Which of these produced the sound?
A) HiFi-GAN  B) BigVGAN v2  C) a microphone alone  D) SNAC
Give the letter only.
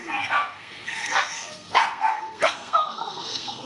D